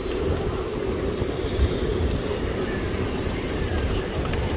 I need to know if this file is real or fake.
fake